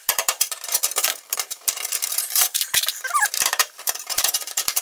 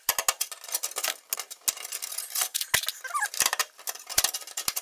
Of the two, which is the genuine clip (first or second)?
second